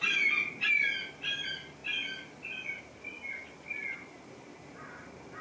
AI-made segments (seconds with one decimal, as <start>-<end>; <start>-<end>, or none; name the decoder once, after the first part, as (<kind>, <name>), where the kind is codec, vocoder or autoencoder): none